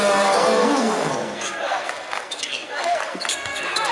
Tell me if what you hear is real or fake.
fake